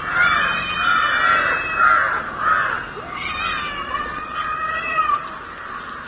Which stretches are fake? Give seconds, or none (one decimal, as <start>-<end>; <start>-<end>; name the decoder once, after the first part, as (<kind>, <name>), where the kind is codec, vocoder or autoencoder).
3.8-5.2 (vocoder, Vocos)